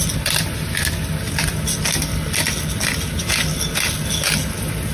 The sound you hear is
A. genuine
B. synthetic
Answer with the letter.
A